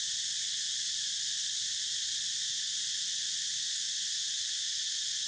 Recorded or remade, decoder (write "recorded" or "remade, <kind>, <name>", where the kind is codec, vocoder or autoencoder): recorded